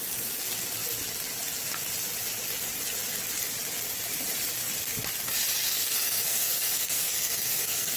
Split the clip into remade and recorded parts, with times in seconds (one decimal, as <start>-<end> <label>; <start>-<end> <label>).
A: 0.0-5.7 recorded; 5.7-8.0 remade